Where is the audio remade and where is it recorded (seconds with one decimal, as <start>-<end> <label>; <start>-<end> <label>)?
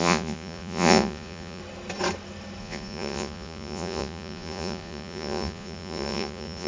0.0-1.6 remade; 1.6-2.6 recorded; 2.6-6.7 remade